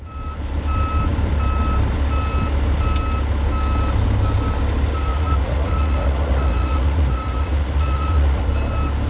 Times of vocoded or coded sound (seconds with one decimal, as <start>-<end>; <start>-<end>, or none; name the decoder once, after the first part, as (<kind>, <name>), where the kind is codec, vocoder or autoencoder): 5.1-8.5 (vocoder, Vocos)